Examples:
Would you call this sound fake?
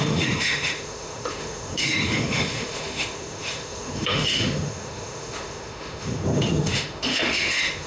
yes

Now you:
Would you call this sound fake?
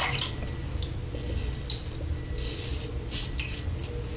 no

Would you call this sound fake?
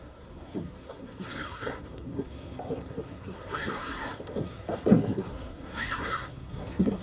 yes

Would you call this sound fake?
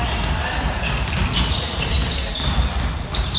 no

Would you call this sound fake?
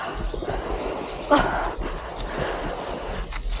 no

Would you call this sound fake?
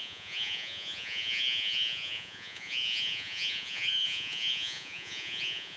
yes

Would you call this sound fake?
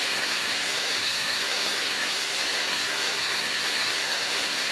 yes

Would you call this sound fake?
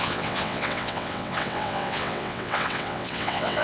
yes